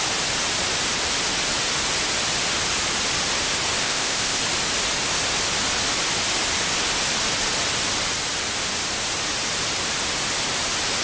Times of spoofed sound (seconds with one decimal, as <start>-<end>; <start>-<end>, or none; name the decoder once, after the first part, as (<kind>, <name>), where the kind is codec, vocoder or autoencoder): 3.8-4.4 (codec, ZipCodec)